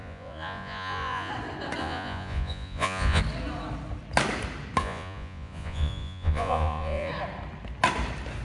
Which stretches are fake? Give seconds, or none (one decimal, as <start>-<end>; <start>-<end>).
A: 0.0-1.3; 1.8-3.2; 4.8-7.1